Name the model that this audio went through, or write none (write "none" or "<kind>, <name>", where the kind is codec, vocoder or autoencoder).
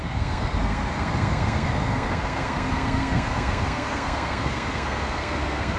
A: codec, SNAC